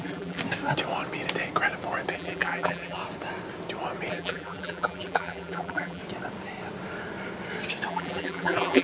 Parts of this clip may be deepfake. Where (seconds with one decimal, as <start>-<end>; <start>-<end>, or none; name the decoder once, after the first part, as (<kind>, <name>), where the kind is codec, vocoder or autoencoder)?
0.0-0.4 (vocoder, BigVGAN v2); 2.1-3.0; 4.1-6.0; 7.9-8.8